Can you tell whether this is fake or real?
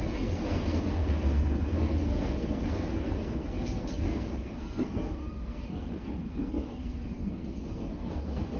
fake